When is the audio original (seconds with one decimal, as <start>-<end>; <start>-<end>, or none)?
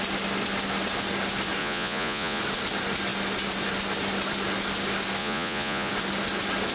0.0-1.6; 2.4-5.2; 5.9-6.7